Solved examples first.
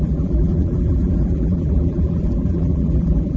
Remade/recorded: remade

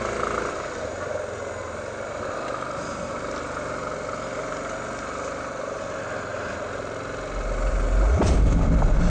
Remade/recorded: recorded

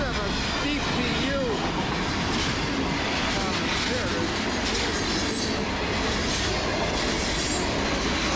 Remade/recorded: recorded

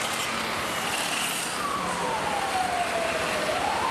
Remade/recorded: recorded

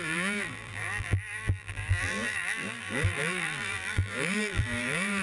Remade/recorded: remade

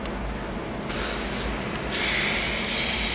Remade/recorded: recorded